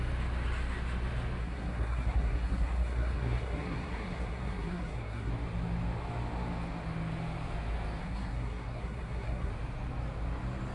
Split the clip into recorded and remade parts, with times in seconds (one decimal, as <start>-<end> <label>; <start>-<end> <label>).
0.0-1.4 recorded; 1.4-5.3 remade; 5.3-8.0 recorded; 8.0-9.5 remade; 9.5-10.7 recorded